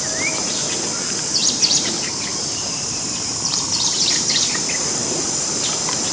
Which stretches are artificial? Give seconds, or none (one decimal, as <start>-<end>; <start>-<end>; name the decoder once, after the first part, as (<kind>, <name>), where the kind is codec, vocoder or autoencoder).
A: 1.4-4.6 (vocoder, BigVGAN v2)